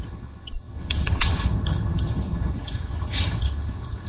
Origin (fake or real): fake